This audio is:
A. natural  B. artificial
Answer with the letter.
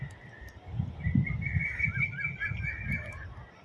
A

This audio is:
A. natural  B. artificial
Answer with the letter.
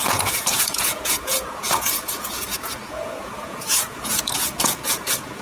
B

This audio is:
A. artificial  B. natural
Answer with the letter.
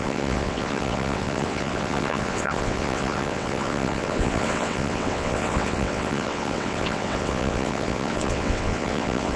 A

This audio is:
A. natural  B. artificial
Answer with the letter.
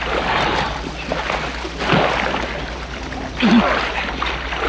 A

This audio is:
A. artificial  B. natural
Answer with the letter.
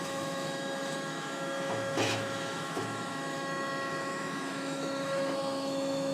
A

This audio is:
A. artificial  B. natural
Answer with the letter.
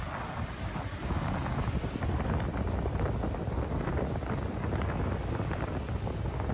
B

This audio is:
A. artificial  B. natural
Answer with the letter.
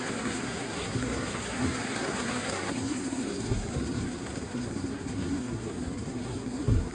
A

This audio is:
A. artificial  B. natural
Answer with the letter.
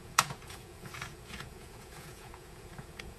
A